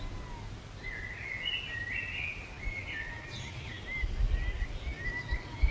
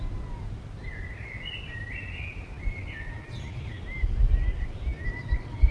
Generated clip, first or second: second